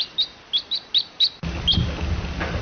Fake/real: real